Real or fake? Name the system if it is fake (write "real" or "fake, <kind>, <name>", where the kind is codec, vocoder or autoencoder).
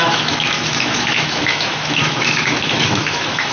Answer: fake, autoencoder, DAC-VAE